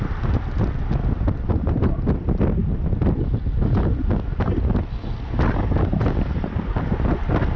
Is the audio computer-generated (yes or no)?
no